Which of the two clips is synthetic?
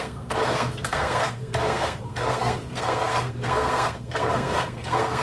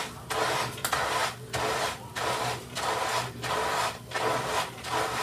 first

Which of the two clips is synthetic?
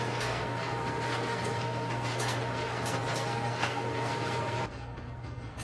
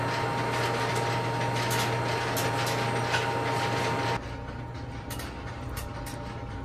first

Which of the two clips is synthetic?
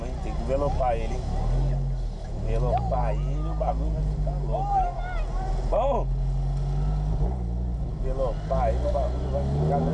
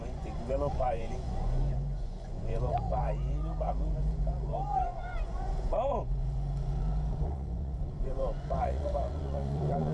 second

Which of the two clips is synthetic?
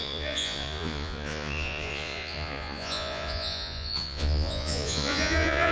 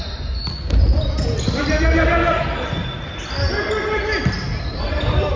first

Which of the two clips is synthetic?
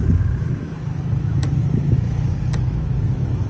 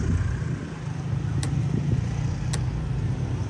first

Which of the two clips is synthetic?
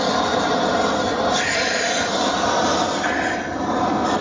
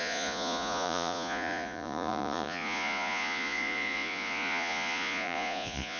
second